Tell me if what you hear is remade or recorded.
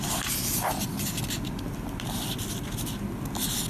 recorded